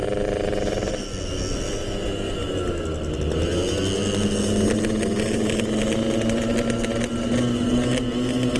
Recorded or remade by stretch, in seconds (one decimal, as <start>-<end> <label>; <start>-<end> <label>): 0.0-8.6 recorded